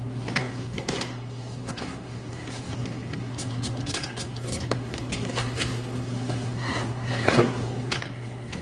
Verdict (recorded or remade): remade